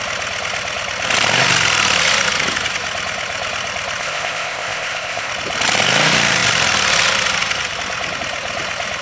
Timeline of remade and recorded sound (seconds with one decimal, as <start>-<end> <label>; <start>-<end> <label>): 0.0-4.0 recorded; 4.0-5.3 remade; 5.3-9.0 recorded